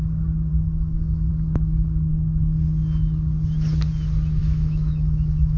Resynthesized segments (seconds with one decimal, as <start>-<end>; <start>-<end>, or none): 0.5-1.3; 4.4-5.6